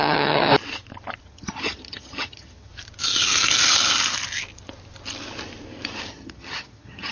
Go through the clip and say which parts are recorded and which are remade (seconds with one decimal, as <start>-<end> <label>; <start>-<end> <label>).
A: 0.0-0.5 remade; 0.5-1.2 recorded; 1.2-2.7 remade; 2.7-6.1 recorded; 6.1-7.1 remade